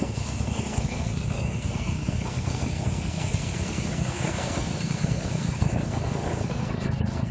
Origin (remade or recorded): remade